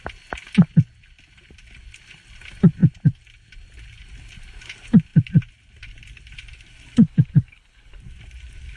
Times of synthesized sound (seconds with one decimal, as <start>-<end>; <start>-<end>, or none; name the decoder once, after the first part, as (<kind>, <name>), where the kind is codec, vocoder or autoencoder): 7.0-8.0 (codec, HILCodec)